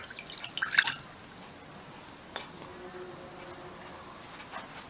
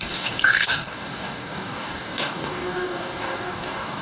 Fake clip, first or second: second